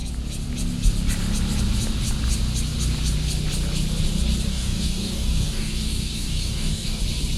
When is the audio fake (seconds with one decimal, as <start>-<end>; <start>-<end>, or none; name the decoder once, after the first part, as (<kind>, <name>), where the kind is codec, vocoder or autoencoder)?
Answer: 4.5-7.0 (codec, DAC)